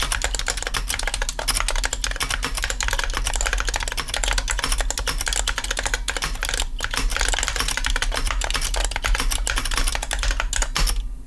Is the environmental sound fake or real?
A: real